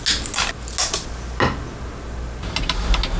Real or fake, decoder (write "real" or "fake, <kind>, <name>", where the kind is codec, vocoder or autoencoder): real